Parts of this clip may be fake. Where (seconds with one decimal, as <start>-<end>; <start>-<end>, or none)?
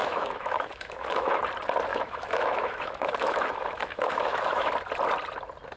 0.0-1.4; 1.9-4.7